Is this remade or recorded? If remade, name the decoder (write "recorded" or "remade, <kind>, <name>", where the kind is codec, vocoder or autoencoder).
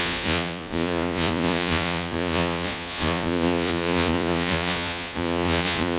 remade, vocoder, Vocos